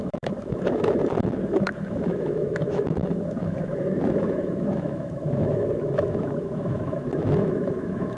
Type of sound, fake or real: fake